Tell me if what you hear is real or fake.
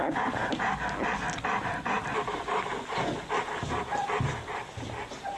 real